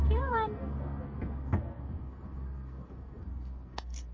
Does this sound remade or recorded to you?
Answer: remade